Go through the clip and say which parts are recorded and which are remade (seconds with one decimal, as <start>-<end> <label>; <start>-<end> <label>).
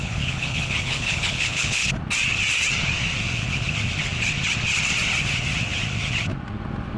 0.0-2.0 remade; 2.0-7.0 recorded